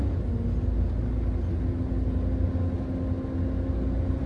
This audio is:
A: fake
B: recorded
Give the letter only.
B